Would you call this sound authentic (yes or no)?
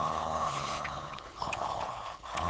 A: no